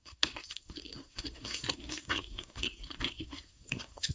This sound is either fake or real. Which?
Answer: fake